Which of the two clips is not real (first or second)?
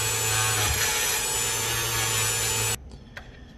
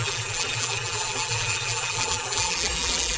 second